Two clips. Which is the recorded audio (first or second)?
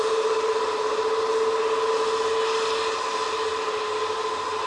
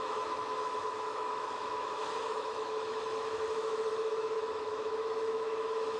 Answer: first